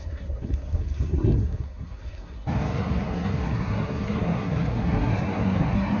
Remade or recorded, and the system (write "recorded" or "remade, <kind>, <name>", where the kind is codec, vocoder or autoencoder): remade, codec, SNAC